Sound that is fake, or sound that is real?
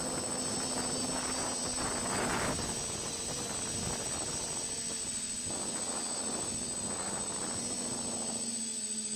real